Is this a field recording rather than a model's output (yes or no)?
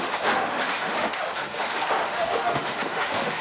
no